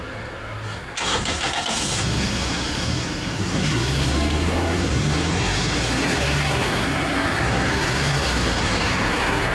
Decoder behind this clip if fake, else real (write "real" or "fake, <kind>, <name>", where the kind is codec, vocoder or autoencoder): fake, codec, SNAC